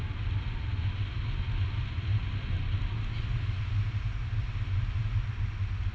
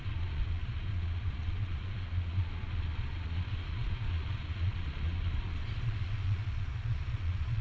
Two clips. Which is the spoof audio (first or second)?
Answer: second